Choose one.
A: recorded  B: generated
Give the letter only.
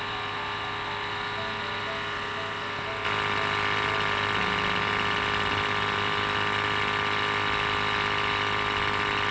A